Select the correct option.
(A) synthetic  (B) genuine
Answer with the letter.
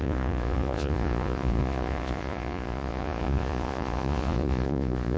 A